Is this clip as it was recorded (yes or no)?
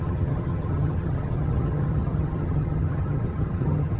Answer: no